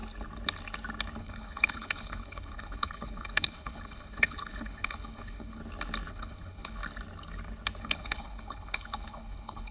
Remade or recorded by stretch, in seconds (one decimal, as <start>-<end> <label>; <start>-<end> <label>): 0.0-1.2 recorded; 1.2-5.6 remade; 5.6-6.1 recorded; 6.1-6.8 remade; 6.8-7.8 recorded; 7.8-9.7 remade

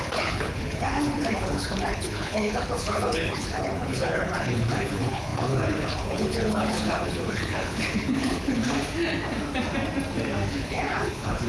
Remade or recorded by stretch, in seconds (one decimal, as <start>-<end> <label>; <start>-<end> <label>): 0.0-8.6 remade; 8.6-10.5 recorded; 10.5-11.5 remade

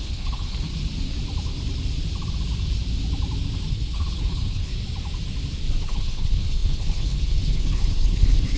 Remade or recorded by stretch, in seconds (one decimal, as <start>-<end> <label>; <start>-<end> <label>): 0.0-0.7 remade; 0.7-3.7 recorded; 3.7-4.7 remade; 4.7-5.8 recorded; 5.8-8.6 remade